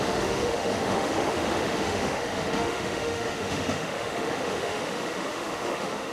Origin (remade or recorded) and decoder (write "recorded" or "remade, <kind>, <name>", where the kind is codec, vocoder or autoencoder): remade, autoencoder, DAC-VAE